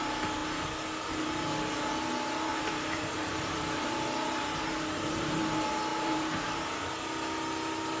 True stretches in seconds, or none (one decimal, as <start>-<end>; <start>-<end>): 0.0-2.5; 5.4-5.9; 6.6-8.0